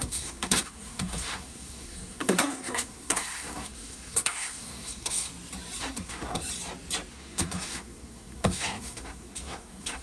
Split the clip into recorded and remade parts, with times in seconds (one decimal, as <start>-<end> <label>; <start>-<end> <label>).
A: 0.0-5.3 remade; 5.3-5.8 recorded; 5.8-6.4 remade; 6.4-7.1 recorded; 7.1-10.0 remade